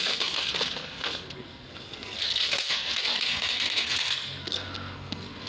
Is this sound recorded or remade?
remade